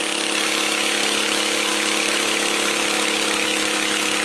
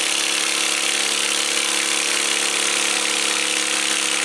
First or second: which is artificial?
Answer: first